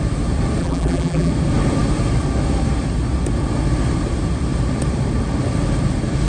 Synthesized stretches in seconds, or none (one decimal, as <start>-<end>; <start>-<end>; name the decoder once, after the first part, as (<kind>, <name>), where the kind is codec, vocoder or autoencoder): 0.6-1.3 (vocoder, BigVGAN v2)